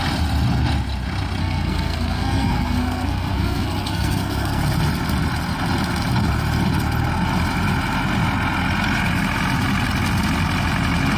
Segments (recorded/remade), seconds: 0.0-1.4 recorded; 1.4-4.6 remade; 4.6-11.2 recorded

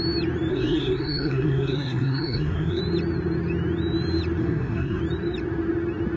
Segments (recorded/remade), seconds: 0.0-0.5 recorded; 0.5-2.8 remade; 2.8-4.4 recorded; 4.4-5.0 remade; 5.0-6.2 recorded